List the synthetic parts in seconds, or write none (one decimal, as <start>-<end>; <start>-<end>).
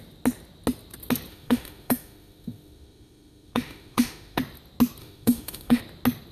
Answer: 1.3-4.4; 5.0-5.8